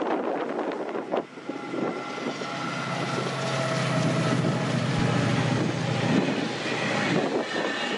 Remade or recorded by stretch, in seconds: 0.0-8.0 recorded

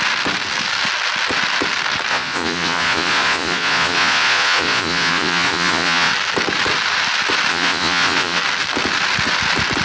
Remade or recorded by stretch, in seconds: 0.0-2.1 recorded; 2.1-6.1 remade; 6.1-7.5 recorded; 7.5-8.4 remade; 8.4-9.8 recorded

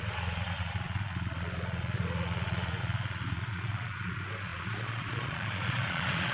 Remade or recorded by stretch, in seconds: 0.0-6.3 remade